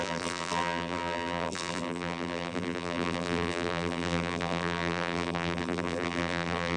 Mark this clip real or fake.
fake